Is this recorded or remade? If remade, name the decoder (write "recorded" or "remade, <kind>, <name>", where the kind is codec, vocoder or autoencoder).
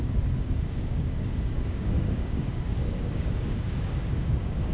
remade, codec, DAC